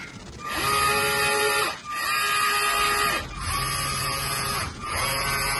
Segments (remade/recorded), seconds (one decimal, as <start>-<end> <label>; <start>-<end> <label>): 0.0-4.0 recorded; 4.0-5.6 remade